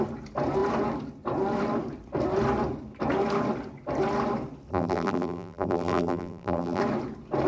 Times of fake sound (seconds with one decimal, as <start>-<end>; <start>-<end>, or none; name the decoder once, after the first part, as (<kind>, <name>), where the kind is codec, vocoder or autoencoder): 4.7-6.8 (vocoder, BigVGAN v2)